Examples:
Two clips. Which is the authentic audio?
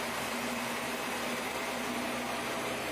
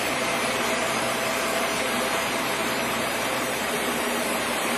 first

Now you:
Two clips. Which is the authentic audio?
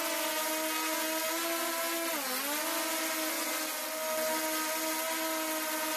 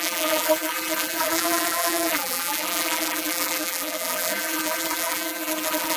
first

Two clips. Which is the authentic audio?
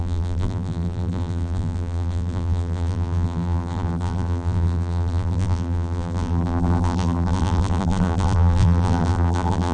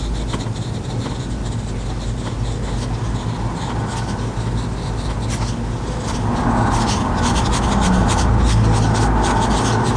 second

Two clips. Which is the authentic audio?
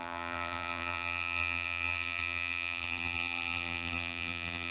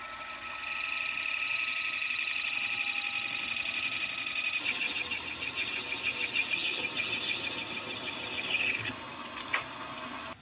second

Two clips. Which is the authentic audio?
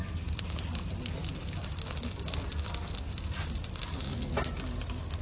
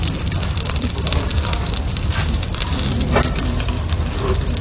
first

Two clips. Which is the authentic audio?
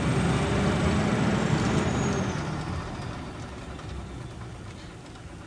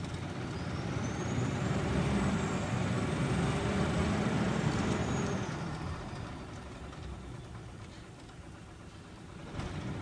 first